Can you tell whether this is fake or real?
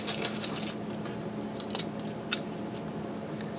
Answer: real